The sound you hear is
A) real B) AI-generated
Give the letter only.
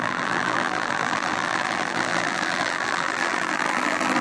B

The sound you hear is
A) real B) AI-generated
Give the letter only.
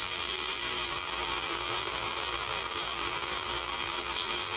B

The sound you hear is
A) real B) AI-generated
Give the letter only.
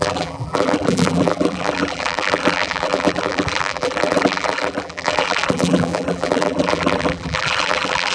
B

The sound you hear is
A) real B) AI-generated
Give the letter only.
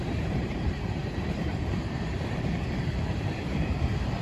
B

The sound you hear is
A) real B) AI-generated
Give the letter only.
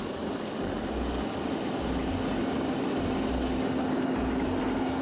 A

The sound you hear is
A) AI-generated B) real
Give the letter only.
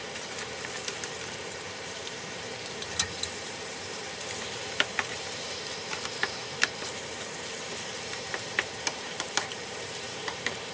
A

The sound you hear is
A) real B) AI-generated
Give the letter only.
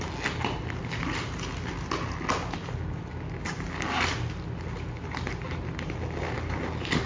A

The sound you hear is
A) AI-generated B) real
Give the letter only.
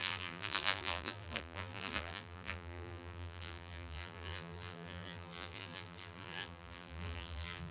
A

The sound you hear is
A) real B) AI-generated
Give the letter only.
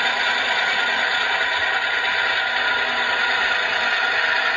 A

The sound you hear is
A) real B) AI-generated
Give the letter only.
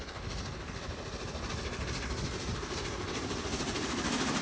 B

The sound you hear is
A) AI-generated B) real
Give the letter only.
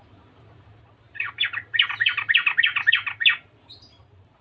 A